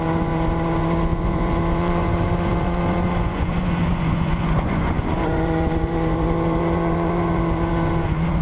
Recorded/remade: remade